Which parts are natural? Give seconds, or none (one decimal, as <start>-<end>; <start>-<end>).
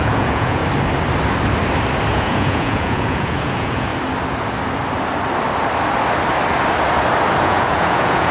0.6-2.1; 3.9-7.4